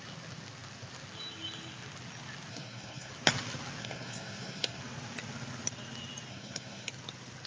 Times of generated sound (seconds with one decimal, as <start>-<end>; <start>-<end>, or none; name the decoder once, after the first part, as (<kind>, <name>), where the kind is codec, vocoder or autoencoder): 2.5-3.1 (codec, SNAC); 3.8-4.8; 6.3-6.9